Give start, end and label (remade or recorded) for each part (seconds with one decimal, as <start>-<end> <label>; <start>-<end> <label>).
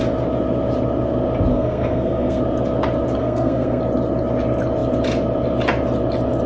0.0-1.5 recorded; 1.5-2.4 remade; 2.4-3.2 recorded; 3.2-3.8 remade; 3.8-6.5 recorded